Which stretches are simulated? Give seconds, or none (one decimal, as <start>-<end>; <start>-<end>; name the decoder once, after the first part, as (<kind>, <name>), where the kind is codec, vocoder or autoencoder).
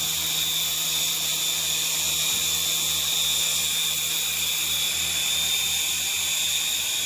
none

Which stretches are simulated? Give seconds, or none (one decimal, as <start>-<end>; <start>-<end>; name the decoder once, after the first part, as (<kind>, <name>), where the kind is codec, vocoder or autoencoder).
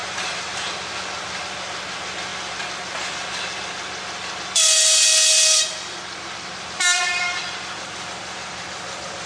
0.0-0.7 (vocoder, BigVGAN v2)